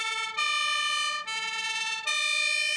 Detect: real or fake real